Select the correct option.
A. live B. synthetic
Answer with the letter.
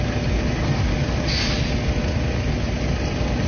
A